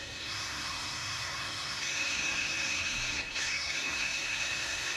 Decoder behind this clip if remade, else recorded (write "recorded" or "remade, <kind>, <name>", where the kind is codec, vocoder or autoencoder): remade, codec, SNAC